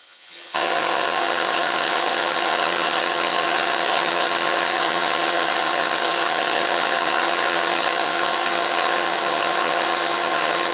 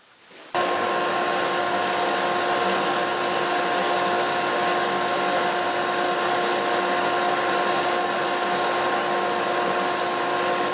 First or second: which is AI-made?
first